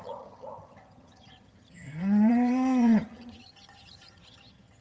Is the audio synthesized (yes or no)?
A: yes